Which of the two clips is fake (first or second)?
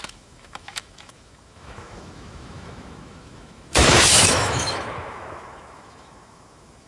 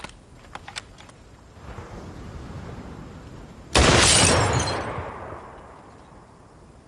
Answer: first